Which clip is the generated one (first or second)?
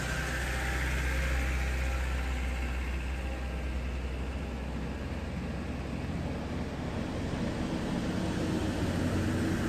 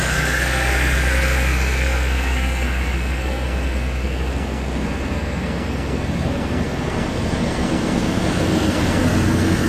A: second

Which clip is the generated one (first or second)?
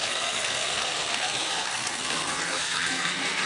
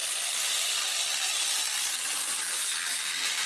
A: first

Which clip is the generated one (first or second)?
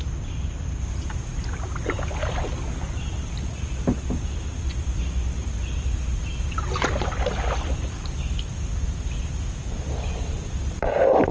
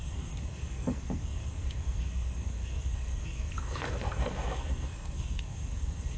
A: second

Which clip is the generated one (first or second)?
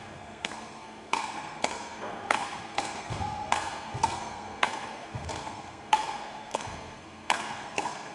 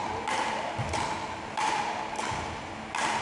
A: first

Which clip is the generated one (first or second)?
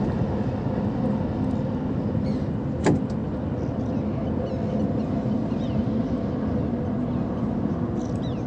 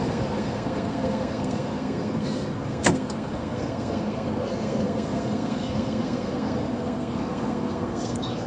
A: second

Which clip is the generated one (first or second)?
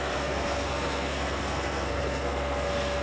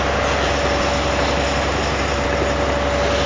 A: first